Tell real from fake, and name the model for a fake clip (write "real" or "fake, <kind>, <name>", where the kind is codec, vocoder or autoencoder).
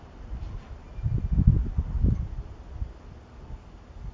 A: real